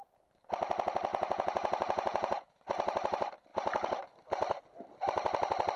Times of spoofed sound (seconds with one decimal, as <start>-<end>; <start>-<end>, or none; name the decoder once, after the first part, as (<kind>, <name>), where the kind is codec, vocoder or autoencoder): 1.1-2.6 (vocoder, Vocos)